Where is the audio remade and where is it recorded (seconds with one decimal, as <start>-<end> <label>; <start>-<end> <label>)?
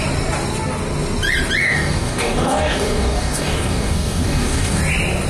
0.0-1.6 recorded; 1.6-4.8 remade; 4.8-5.3 recorded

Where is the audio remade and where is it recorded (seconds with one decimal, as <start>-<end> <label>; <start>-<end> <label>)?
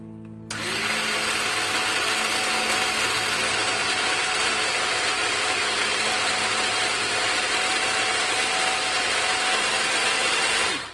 0.0-9.5 recorded; 9.5-10.4 remade; 10.4-10.9 recorded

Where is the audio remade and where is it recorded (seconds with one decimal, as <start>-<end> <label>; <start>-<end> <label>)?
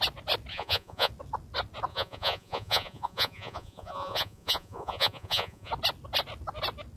0.0-0.5 recorded; 0.5-1.1 remade; 1.1-1.9 recorded; 1.9-5.7 remade; 5.7-7.0 recorded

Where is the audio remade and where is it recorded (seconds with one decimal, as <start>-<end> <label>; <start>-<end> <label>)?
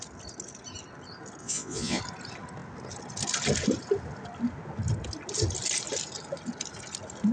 0.0-1.4 recorded; 1.4-2.0 remade; 2.0-7.3 recorded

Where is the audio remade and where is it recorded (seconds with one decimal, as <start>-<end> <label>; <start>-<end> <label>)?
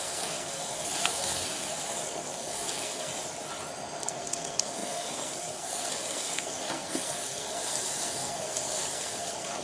0.0-3.1 remade; 3.1-4.0 recorded; 4.0-9.6 remade